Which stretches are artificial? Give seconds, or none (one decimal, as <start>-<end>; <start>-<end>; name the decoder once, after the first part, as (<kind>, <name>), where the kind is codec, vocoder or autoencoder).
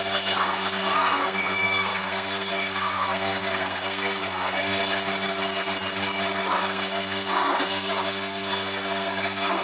0.0-4.8 (codec, SNAC); 6.6-9.6